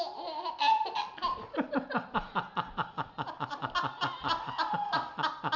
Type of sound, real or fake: real